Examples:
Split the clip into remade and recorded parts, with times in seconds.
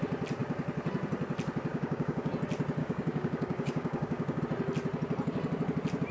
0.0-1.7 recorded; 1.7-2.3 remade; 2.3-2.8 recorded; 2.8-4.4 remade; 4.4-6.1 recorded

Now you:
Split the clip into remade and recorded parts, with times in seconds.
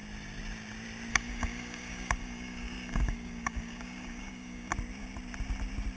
0.0-1.1 recorded; 1.1-4.7 remade; 4.7-6.0 recorded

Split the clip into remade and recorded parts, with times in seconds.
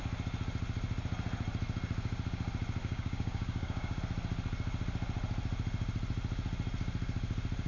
0.0-2.8 recorded; 2.8-4.0 remade; 4.0-7.7 recorded